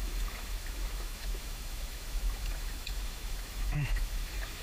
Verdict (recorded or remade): remade